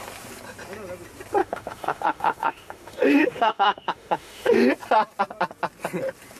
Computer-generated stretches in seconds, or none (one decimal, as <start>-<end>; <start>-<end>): 1.4-4.7